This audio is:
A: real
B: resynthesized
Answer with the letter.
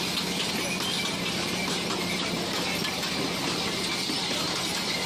A